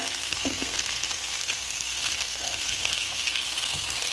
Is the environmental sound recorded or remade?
remade